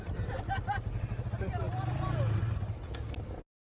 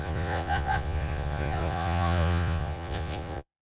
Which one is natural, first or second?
first